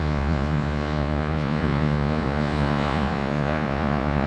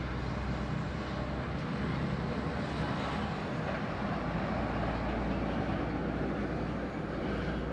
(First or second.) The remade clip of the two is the first